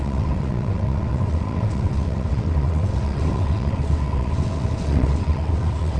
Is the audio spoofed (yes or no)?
yes